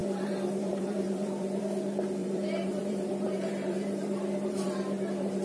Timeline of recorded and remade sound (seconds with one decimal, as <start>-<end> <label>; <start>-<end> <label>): 0.0-1.6 remade; 1.6-2.2 recorded; 2.2-5.4 remade